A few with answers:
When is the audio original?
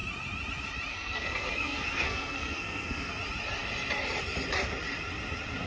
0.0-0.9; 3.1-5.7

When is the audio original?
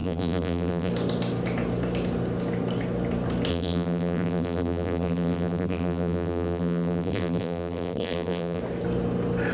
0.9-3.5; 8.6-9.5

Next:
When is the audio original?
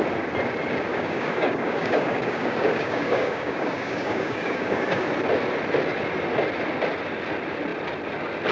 0.0-0.9; 5.0-8.5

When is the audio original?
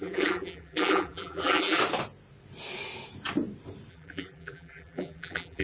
1.8-3.9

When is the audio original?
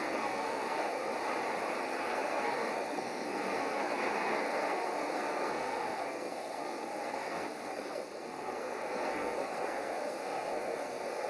1.1-1.8